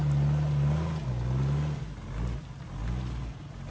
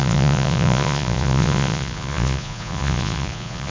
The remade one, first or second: second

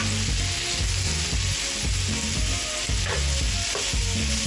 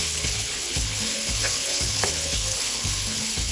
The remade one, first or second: second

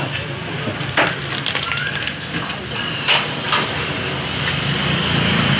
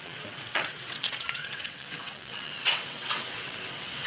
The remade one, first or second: second